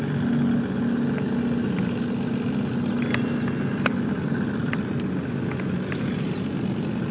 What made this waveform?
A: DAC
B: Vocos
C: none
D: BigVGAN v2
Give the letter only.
C